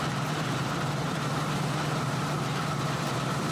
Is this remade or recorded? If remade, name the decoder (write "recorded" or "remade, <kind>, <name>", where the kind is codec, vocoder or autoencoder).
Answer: remade, vocoder, BigVGAN v2